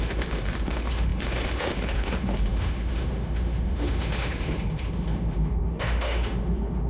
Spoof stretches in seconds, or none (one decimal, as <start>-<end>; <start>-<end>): 0.0-6.9